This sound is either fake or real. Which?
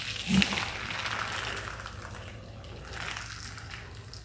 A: real